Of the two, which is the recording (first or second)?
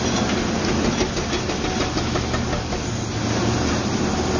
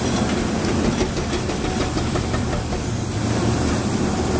first